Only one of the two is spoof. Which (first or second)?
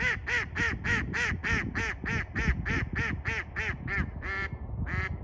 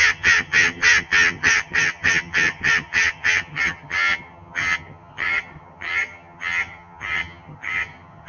second